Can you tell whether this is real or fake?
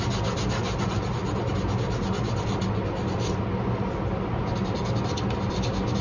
real